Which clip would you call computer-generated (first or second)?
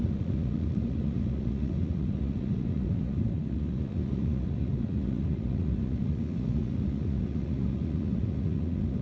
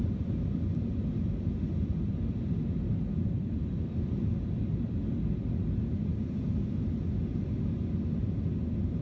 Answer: first